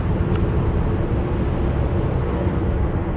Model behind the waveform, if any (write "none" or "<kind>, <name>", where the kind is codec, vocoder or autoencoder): none